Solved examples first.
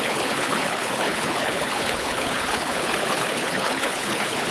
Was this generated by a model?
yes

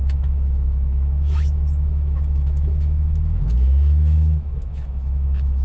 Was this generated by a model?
yes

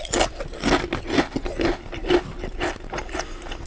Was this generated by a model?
no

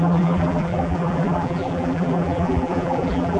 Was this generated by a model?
yes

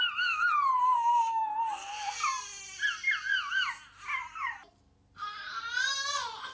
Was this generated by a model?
no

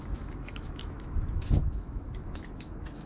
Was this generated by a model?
yes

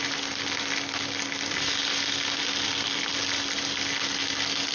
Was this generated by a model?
no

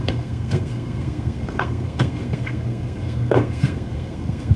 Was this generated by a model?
yes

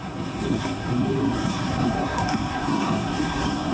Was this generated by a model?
yes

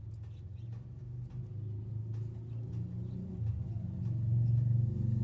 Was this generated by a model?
no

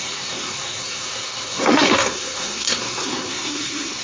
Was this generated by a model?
yes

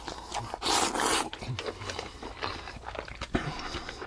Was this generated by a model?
no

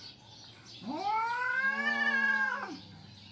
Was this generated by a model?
no